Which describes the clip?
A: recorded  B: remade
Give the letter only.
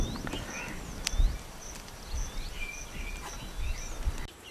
A